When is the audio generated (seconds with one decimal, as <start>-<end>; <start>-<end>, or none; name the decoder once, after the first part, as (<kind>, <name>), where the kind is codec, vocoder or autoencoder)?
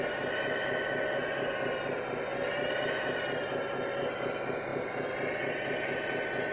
none